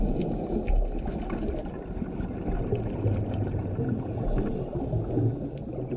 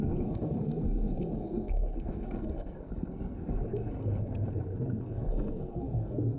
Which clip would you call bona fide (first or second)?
first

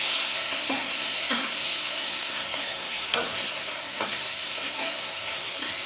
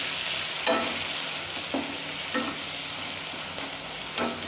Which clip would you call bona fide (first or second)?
second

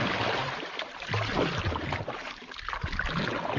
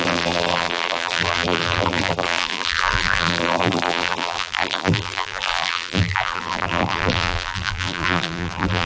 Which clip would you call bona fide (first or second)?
first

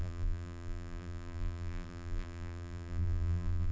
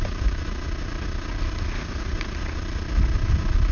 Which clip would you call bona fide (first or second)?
second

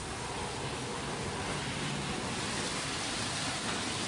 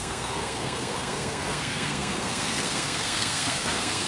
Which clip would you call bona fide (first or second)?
first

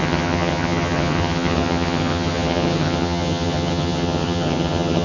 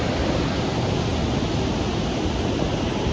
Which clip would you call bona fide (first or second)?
second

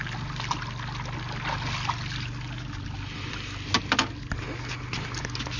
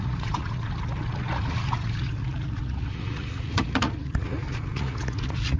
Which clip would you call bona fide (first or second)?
first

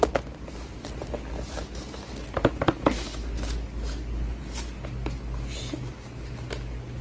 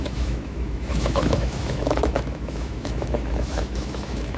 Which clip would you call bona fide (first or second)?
first